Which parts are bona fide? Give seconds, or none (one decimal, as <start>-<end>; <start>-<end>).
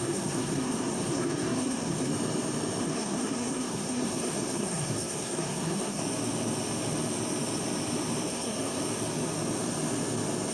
2.1-2.8; 6.0-8.3; 8.8-10.5